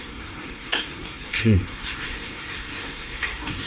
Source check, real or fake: fake